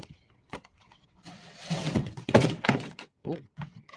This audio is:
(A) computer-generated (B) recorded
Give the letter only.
A